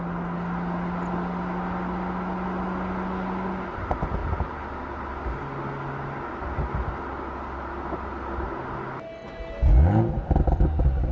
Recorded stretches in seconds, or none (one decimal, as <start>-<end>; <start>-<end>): 0.0-11.1